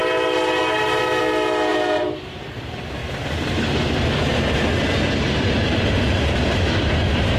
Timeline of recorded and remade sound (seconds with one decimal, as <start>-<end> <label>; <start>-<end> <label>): 0.0-1.2 remade; 1.2-1.7 recorded; 1.7-2.4 remade; 2.4-7.4 recorded